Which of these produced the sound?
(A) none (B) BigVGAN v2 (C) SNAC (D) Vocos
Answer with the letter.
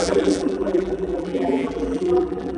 B